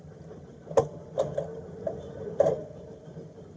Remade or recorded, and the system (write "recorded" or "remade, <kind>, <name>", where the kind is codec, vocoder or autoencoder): recorded